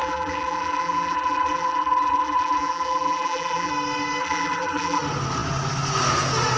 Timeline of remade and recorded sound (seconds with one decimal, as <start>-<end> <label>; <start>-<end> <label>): 0.0-3.7 remade; 3.7-4.2 recorded; 4.2-5.0 remade; 5.0-6.6 recorded